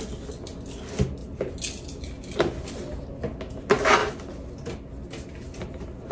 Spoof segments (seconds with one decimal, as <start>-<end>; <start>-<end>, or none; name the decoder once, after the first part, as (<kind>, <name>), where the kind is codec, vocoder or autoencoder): none